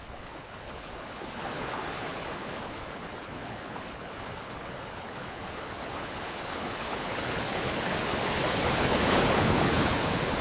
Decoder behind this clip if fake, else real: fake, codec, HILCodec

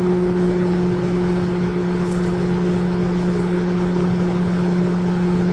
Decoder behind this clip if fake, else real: fake, codec, HILCodec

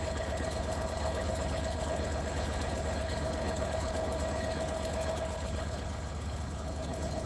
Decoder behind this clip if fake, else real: fake, codec, HILCodec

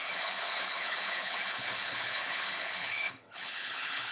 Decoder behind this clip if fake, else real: fake, codec, HILCodec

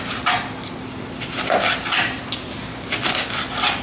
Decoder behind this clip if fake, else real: real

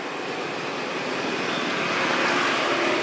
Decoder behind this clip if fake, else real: real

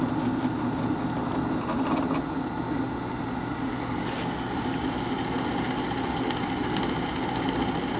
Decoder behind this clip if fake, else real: real